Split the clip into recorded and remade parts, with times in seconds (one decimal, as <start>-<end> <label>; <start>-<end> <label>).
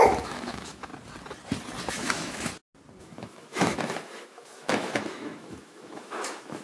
0.0-0.9 remade; 0.9-1.9 recorded; 1.9-2.5 remade; 2.5-3.0 recorded; 3.0-6.6 remade